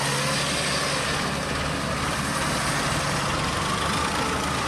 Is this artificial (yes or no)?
no